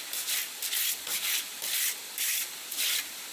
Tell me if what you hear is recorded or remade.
recorded